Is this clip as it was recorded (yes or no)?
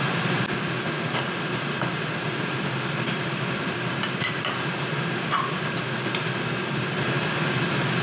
yes